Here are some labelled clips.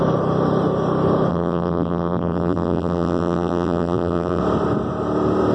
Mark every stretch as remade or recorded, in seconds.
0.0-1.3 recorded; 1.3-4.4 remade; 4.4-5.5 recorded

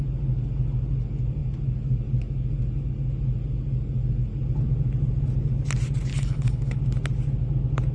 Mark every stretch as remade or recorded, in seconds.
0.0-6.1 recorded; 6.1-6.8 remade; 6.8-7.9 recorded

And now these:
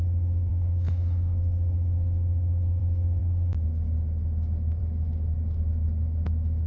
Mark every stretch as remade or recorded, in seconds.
0.0-0.5 recorded; 0.5-2.8 remade; 2.8-6.7 recorded